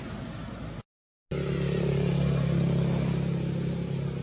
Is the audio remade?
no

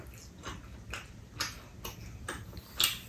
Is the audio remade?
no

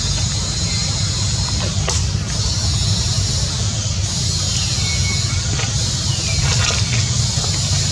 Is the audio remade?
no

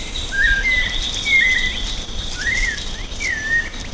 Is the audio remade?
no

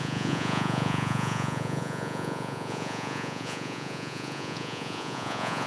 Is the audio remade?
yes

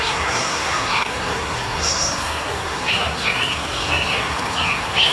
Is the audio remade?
yes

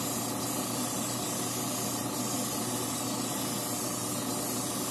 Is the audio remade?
no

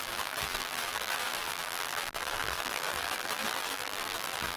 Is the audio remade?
yes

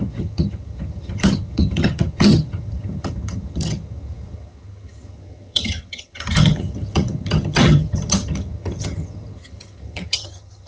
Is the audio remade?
yes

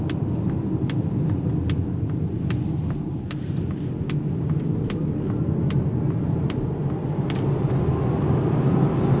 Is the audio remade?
no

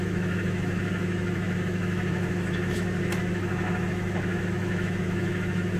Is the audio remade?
yes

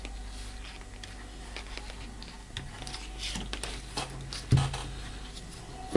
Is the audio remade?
no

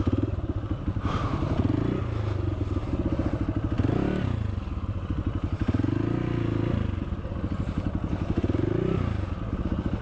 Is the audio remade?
no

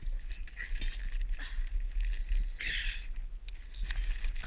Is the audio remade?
no